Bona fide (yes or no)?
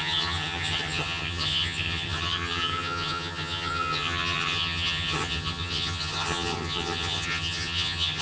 no